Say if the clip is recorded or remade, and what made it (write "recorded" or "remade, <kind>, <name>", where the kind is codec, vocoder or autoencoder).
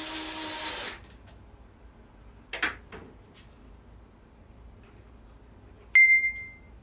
recorded